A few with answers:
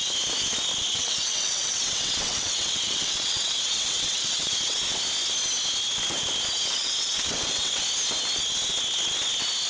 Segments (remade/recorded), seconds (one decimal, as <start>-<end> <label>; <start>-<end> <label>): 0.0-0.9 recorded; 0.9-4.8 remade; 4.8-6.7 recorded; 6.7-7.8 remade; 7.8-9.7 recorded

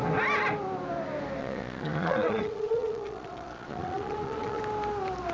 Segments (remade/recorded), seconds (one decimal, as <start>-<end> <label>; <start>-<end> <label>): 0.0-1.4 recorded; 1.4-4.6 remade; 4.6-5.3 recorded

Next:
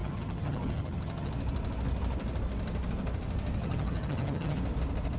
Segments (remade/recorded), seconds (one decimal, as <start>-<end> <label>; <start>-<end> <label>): 0.0-1.3 remade; 1.3-3.6 recorded; 3.6-4.6 remade; 4.6-5.2 recorded